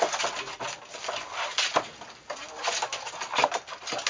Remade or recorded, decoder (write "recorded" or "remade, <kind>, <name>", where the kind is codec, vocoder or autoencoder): recorded